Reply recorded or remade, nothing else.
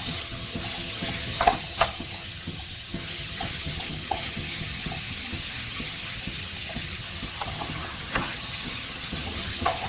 remade